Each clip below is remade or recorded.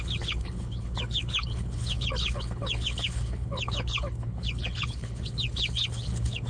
remade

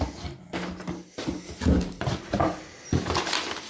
recorded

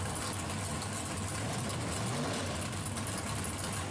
recorded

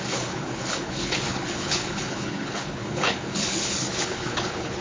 remade